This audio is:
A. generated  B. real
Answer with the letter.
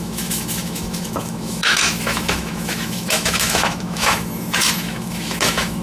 A